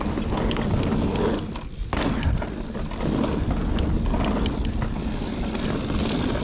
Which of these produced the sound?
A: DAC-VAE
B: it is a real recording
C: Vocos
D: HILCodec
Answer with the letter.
B